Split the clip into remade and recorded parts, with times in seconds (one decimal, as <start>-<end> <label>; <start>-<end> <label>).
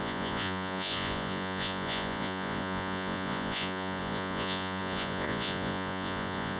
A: 0.0-6.6 remade